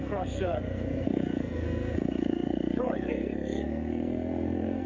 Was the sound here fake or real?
fake